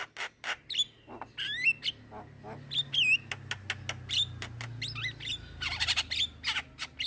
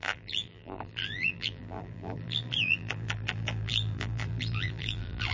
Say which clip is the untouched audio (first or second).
first